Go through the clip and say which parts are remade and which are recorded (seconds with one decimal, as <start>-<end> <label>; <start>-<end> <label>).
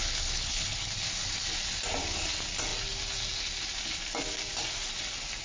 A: 0.0-0.9 remade; 0.9-5.4 recorded